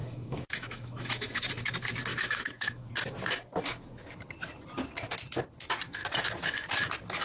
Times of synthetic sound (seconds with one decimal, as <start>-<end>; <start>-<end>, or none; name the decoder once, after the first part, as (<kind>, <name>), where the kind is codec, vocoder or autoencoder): 0.0-1.5 (autoencoder, DAC-VAE); 2.1-2.9

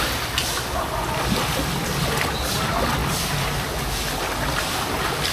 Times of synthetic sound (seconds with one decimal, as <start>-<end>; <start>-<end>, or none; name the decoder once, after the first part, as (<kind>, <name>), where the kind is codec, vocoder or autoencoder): none